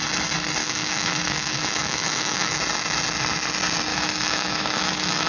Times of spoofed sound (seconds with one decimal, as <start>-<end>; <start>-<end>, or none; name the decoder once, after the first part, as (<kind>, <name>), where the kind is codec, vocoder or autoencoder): 0.6-2.6 (autoencoder, DAC-VAE); 3.9-5.3